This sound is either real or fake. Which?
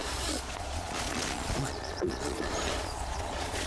fake